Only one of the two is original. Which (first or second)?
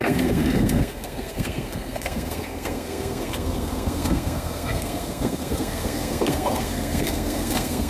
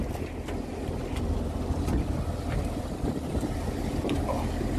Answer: second